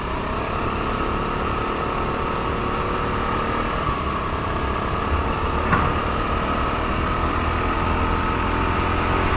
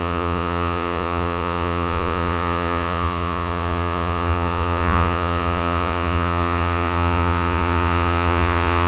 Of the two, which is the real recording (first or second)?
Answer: first